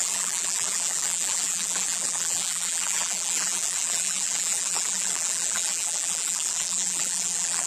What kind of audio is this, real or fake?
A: fake